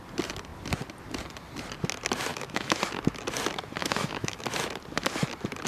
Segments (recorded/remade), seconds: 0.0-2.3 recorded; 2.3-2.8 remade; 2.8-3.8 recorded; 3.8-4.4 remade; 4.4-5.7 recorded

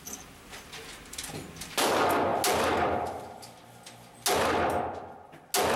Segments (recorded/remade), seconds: 0.0-5.8 recorded

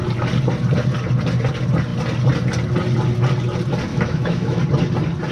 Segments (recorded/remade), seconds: 0.0-3.9 recorded; 3.9-4.6 remade; 4.6-5.3 recorded

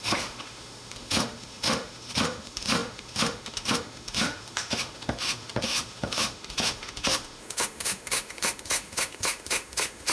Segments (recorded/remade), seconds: 0.0-10.1 remade

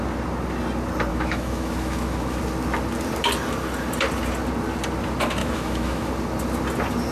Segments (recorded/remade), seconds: 0.0-1.1 recorded; 1.1-2.4 remade; 2.4-5.4 recorded; 5.4-6.1 remade; 6.1-7.1 recorded